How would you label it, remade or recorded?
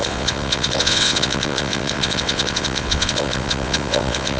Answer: remade